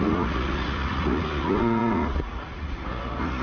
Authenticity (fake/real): fake